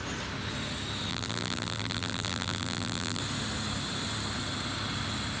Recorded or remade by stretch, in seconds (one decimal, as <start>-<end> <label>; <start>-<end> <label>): 0.0-1.1 recorded; 1.1-3.2 remade; 3.2-5.4 recorded